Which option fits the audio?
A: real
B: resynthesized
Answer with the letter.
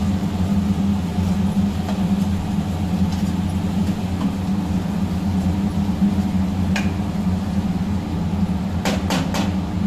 A